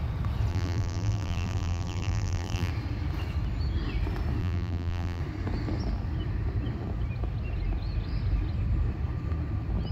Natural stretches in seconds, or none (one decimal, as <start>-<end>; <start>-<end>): 0.0-0.5; 2.7-4.4; 5.2-9.9